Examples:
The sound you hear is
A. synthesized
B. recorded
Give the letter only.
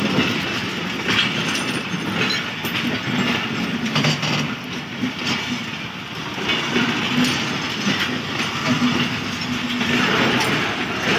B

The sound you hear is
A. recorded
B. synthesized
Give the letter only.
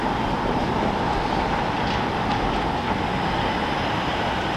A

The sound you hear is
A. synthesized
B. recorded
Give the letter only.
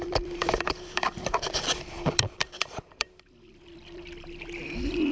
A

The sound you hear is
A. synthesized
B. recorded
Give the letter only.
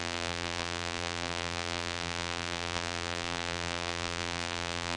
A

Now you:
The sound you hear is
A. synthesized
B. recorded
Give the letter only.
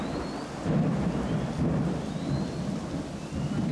B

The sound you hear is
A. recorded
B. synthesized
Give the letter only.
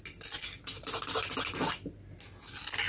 A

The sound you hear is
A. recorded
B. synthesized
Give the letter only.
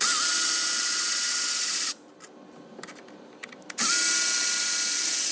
A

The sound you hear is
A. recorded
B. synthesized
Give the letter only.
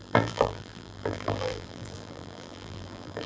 B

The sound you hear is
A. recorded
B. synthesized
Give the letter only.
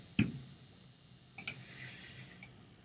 A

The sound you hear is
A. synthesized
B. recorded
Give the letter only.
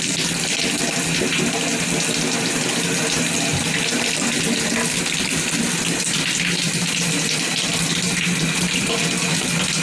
B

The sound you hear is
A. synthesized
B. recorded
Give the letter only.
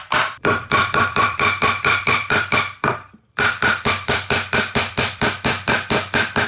A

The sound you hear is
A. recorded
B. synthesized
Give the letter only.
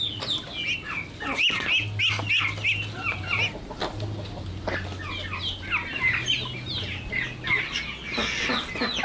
A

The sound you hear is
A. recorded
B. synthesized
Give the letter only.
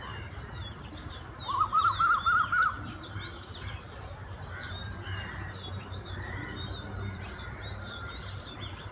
B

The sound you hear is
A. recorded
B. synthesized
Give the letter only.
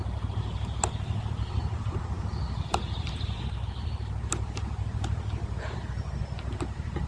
B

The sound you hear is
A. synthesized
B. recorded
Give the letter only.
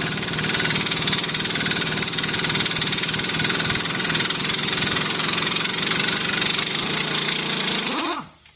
B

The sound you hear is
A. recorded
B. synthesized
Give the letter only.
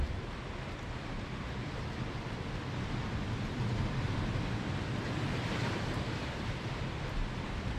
B